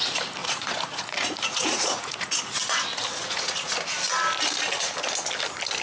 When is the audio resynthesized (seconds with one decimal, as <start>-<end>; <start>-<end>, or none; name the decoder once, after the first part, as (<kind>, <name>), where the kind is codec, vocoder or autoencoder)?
0.4-2.4 (vocoder, Vocos); 3.2-3.7